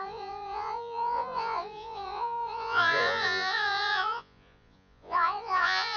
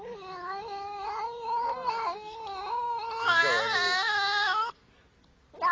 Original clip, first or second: second